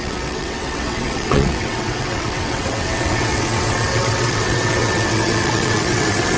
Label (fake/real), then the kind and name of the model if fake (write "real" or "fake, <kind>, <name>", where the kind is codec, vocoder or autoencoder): fake, vocoder, WaveNeXt